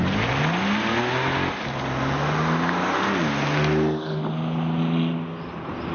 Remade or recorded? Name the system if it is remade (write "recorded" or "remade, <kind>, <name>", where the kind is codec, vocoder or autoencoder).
recorded